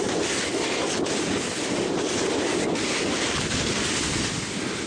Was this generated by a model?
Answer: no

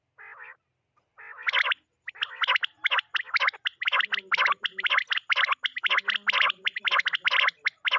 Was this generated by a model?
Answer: no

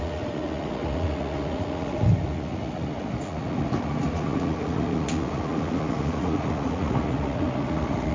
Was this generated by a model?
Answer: yes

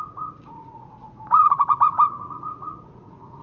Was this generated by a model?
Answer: yes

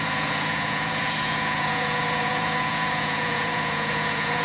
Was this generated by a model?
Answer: yes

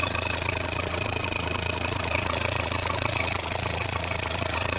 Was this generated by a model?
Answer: yes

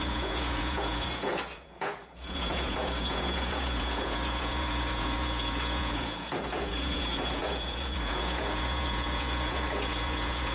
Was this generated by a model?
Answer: yes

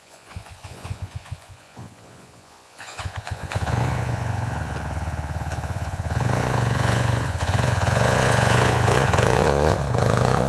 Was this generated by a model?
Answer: yes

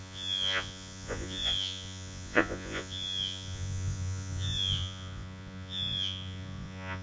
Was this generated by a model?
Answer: yes